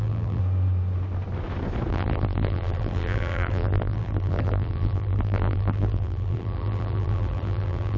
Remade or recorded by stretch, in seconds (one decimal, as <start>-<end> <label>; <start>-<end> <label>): 0.0-0.4 remade; 0.4-1.9 recorded; 1.9-8.0 remade